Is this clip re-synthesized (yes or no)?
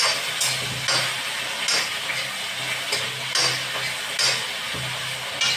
no